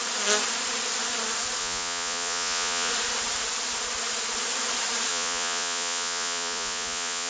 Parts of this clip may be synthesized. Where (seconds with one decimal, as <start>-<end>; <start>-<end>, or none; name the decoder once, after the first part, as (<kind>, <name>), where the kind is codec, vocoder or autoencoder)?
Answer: 1.6-2.9 (vocoder, Vocos); 5.1-7.3